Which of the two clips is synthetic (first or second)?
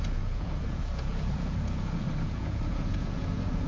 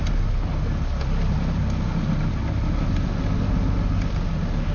first